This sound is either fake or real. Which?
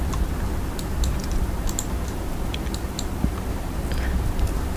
real